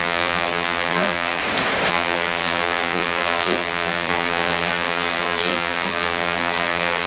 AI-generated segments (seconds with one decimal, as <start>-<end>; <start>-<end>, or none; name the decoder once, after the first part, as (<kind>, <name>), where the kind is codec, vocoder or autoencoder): 0.0-1.4 (vocoder, BigVGAN v2); 1.9-7.1